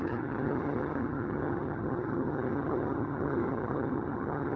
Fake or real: fake